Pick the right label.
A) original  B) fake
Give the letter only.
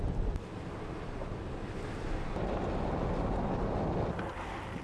A